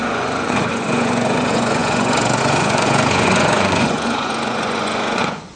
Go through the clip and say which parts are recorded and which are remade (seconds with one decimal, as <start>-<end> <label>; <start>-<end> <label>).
0.0-5.6 remade